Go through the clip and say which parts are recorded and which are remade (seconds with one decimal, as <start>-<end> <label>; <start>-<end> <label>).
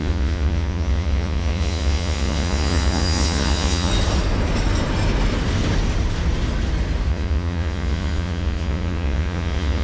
0.0-3.9 remade; 3.9-7.1 recorded; 7.1-9.8 remade